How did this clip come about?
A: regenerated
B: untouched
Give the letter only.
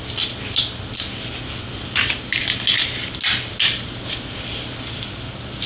B